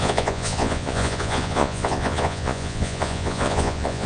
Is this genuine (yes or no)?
no